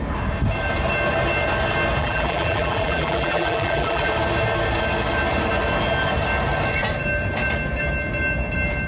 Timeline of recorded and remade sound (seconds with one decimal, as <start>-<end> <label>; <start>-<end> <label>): 0.0-2.0 recorded; 2.0-4.1 remade; 4.1-8.9 recorded

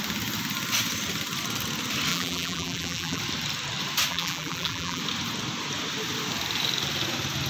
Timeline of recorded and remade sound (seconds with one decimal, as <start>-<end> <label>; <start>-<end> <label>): 0.0-2.1 recorded; 2.1-3.2 remade; 3.2-4.1 recorded; 4.1-5.0 remade; 5.0-7.5 recorded